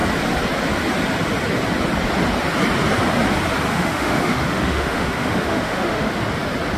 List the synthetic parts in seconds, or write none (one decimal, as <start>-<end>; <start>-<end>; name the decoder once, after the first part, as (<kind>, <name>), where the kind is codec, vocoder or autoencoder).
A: 3.7-6.1 (autoencoder, DAC-VAE)